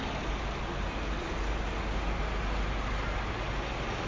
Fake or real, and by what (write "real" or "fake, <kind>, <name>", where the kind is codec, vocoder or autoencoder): real